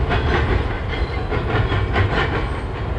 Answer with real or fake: real